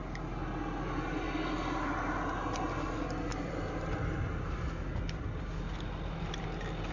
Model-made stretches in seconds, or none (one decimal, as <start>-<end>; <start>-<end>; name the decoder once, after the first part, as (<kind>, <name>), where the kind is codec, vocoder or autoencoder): 3.3-4.4 (vocoder, BigVGAN v2)